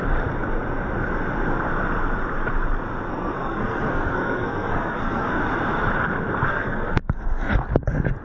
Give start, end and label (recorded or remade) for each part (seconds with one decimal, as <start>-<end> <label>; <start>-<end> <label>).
0.0-3.1 recorded; 3.1-5.4 remade; 5.4-6.5 recorded; 6.5-7.0 remade; 7.0-8.2 recorded

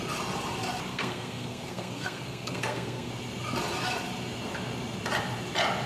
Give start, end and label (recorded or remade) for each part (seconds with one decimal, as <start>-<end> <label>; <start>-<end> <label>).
0.0-0.9 recorded; 0.9-3.1 remade; 3.1-5.9 recorded

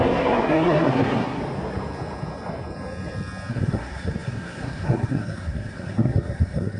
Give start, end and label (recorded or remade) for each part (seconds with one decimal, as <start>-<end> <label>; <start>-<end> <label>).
0.0-1.4 remade; 1.4-3.5 recorded; 3.5-6.8 remade

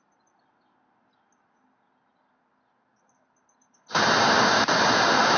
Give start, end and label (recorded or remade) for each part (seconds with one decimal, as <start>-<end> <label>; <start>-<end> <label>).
0.0-5.4 recorded